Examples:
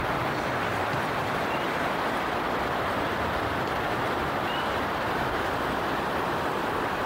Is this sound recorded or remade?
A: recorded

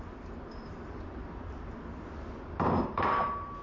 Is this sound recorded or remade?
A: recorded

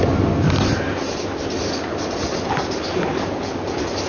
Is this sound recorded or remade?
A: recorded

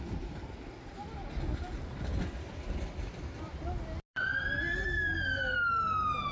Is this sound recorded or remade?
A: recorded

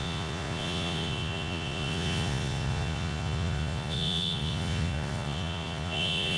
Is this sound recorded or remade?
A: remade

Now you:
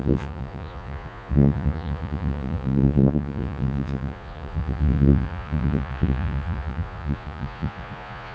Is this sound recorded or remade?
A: remade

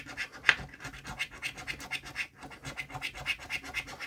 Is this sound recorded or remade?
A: recorded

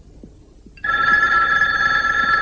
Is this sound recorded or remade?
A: recorded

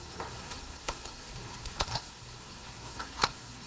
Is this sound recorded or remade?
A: remade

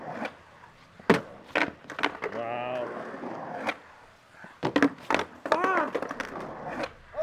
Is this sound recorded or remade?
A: recorded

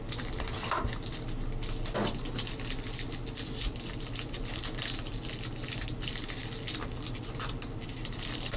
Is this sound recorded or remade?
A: recorded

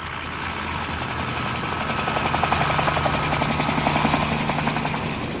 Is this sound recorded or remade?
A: recorded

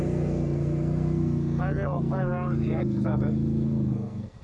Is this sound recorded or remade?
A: remade